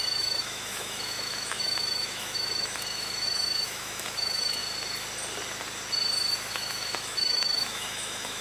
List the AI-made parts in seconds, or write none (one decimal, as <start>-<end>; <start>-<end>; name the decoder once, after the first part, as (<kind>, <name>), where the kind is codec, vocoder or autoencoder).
0.0-4.6 (autoencoder, DAC-VAE); 6.5-8.4